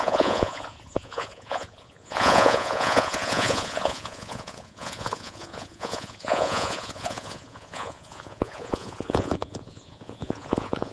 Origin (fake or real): fake